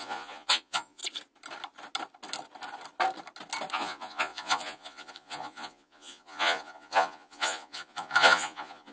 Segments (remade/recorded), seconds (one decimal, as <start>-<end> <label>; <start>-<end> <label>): 0.0-1.0 remade; 1.0-3.7 recorded; 3.7-8.9 remade